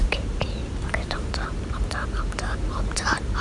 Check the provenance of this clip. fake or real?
fake